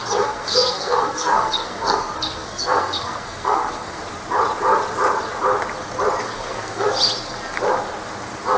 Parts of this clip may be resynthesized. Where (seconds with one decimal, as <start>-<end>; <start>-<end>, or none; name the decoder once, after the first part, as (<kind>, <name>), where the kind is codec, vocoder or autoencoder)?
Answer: 0.0-4.0 (codec, SNAC); 6.2-6.9